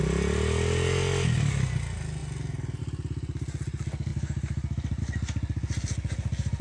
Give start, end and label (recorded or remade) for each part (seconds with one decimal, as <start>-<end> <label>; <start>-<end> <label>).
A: 0.0-6.6 recorded